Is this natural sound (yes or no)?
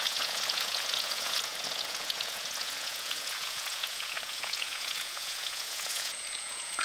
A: no